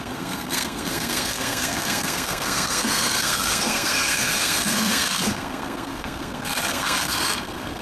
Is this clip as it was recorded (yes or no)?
no